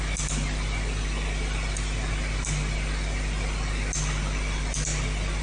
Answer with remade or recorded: recorded